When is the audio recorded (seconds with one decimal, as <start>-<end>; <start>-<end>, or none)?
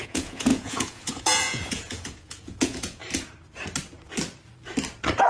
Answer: 3.0-5.3